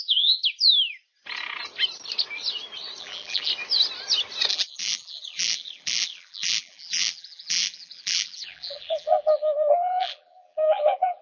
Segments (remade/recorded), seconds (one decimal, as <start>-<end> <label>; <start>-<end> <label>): 0.0-0.4 remade; 0.4-3.0 recorded; 3.0-3.5 remade; 3.5-4.5 recorded; 4.5-11.2 remade